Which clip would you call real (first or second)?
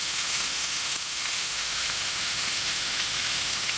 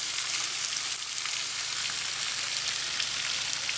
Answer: second